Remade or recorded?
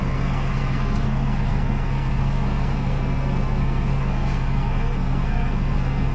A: remade